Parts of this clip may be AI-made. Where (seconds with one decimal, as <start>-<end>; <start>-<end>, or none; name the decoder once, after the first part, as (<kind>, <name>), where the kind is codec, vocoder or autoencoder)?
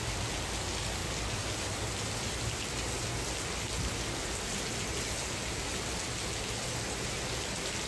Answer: none